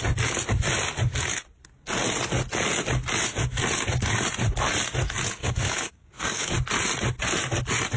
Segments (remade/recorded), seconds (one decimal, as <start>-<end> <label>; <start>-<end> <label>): 0.0-5.4 recorded; 5.4-6.5 remade; 6.5-8.0 recorded